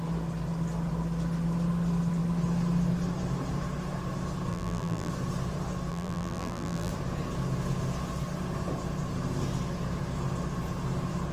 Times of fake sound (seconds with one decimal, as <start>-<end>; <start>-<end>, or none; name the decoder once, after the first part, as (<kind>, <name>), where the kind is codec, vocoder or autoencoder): 4.5-5.1 (vocoder, BigVGAN v2); 5.9-6.9